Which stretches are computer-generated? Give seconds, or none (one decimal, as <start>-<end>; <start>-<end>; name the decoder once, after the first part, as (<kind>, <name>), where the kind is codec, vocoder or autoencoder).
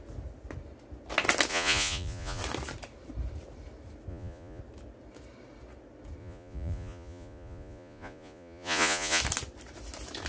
1.5-2.4 (vocoder, Vocos); 4.1-4.6; 6.2-9.2